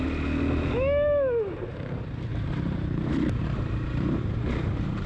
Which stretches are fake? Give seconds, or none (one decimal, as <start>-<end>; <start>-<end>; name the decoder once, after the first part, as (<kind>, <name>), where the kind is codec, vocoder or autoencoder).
1.7-5.1 (vocoder, BigVGAN v2)